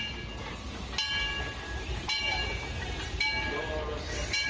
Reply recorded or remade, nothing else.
recorded